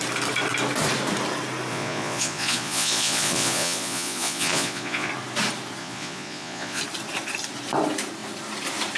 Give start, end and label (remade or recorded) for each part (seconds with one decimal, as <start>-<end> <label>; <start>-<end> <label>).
0.0-1.7 recorded; 1.7-5.1 remade; 5.1-5.8 recorded; 5.8-6.8 remade; 6.8-9.0 recorded